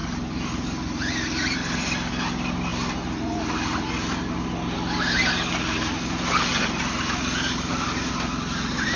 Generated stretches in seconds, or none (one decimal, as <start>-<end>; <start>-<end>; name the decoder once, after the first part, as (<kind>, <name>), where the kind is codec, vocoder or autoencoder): 0.0-2.1 (vocoder, BigVGAN v2)